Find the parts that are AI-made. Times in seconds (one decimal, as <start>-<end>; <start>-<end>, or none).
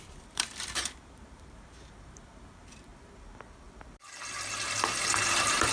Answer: 0.0-2.9; 5.3-5.7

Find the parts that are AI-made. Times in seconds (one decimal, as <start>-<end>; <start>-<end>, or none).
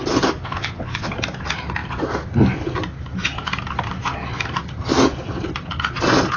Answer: 0.4-1.1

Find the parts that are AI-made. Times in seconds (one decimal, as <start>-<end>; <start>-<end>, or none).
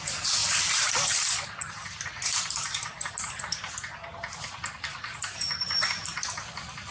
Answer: none